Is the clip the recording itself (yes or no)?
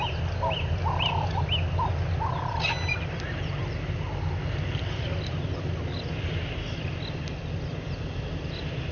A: yes